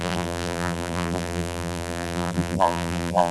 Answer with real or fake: fake